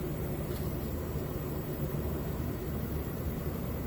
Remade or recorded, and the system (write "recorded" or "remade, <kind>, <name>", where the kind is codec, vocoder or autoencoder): remade, vocoder, BigVGAN v2